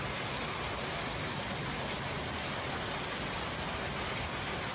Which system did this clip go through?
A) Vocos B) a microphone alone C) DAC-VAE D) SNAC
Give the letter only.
B